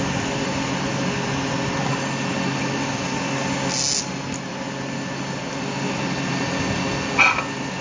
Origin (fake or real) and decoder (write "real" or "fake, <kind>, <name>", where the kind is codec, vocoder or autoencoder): real